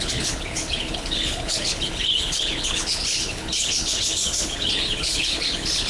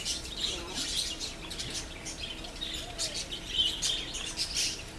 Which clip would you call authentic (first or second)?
second